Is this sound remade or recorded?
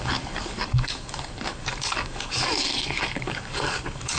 remade